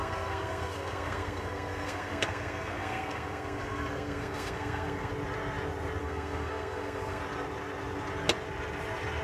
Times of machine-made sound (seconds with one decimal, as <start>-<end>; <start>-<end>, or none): 0.0-5.1; 6.0-7.2